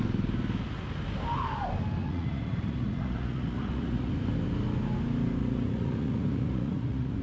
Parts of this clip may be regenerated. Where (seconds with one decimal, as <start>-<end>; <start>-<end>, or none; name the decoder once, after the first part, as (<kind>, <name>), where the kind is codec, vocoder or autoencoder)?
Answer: 2.0-4.1 (vocoder, Vocos); 5.4-7.2